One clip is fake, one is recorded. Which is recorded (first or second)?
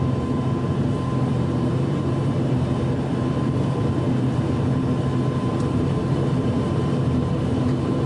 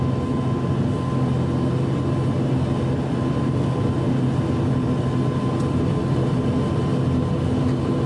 second